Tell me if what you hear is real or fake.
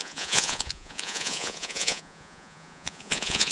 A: fake